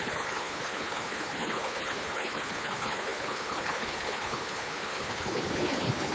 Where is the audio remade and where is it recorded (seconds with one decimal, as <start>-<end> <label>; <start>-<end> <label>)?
0.0-6.1 remade